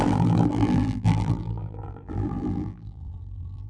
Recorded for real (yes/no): no